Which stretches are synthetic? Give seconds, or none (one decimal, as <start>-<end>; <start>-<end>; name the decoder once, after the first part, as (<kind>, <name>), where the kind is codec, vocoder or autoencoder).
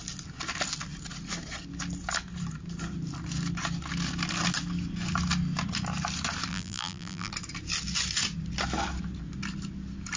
6.5-7.3 (vocoder, BigVGAN v2)